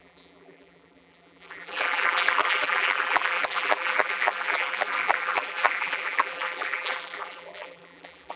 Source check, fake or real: fake